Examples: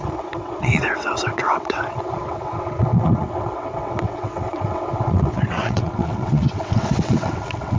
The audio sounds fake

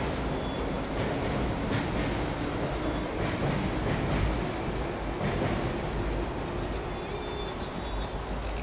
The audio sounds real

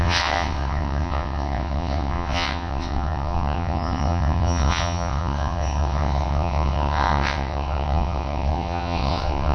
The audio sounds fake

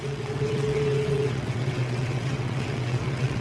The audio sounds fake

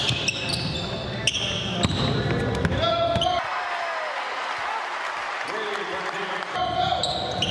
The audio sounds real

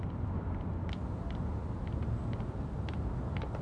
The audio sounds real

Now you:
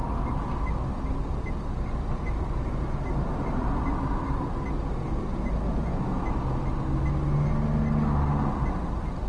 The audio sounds real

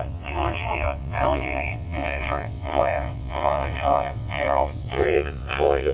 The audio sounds fake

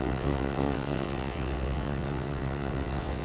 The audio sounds fake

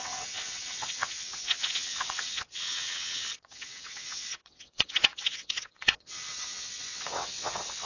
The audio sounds fake